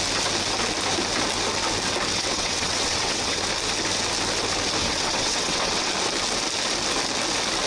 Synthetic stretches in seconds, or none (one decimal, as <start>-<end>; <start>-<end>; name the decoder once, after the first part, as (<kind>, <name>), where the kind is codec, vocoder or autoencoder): 2.1-3.4 (vocoder, WaveNeXt); 4.8-5.9